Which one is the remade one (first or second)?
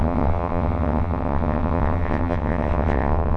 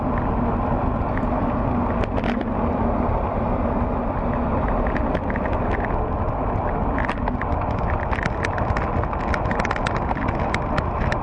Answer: first